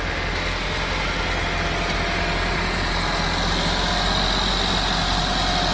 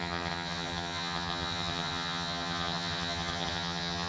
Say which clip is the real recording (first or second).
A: first